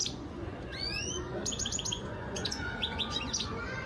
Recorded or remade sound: remade